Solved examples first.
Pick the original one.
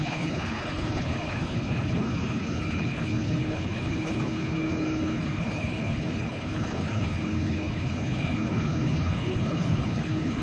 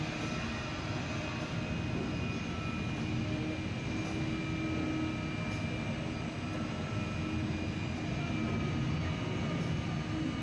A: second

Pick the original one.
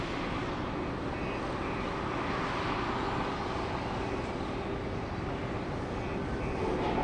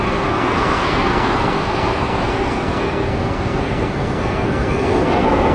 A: first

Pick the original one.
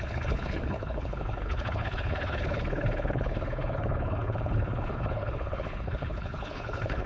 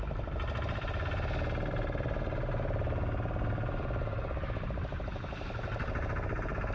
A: second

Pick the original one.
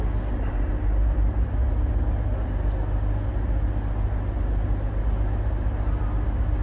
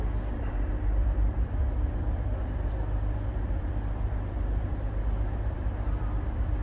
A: first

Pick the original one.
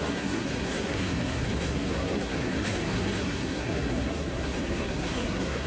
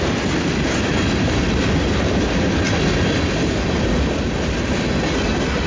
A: second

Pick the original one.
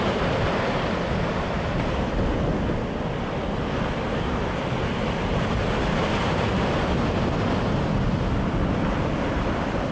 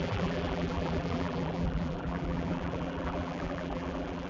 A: first